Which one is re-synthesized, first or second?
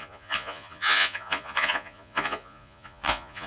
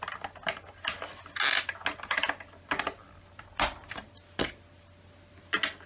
first